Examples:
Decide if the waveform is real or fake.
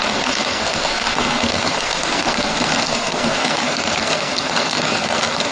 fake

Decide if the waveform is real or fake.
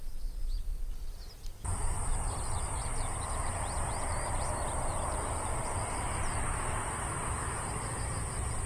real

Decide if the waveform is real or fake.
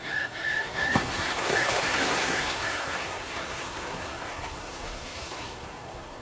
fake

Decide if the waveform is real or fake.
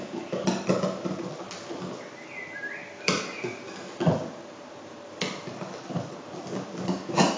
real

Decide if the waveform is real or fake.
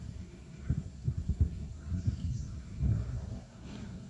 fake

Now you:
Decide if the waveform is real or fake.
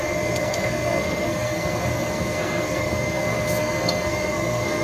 fake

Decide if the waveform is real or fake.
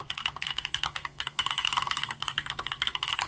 fake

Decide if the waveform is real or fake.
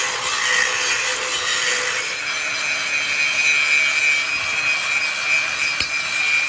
real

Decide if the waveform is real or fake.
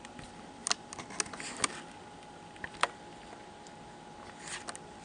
real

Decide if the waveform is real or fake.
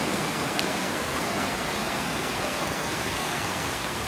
fake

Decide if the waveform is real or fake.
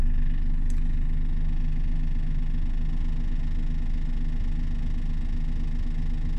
real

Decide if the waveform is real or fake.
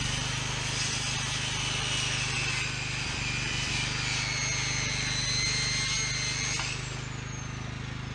real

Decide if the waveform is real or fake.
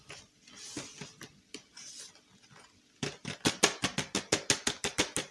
real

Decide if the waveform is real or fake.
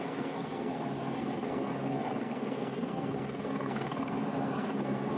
fake